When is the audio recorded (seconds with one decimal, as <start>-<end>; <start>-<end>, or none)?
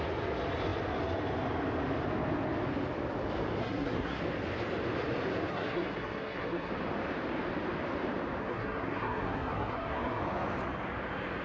0.0-3.6; 4.2-5.5; 6.7-8.4; 10.2-11.4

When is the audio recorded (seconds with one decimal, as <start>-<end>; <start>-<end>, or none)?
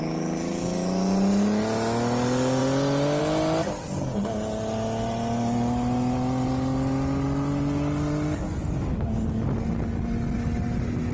0.0-11.1